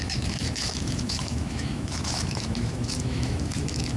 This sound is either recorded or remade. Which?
remade